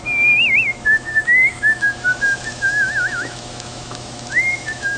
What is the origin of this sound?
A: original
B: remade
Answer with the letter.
B